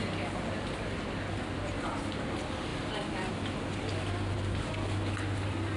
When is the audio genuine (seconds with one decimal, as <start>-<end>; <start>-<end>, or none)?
0.0-5.8